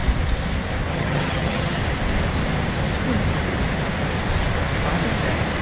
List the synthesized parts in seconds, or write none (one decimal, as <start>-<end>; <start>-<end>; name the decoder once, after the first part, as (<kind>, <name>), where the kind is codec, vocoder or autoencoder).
0.9-1.8 (vocoder, HiFi-GAN)